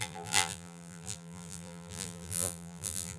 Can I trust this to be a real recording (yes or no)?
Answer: no